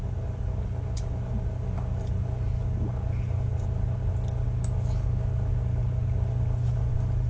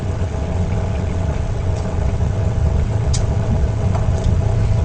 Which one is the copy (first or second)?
second